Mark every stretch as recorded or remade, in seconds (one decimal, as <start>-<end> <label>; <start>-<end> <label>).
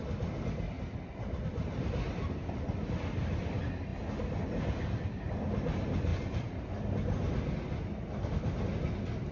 0.0-9.3 recorded